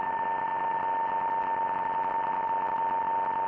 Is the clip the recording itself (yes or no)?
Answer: yes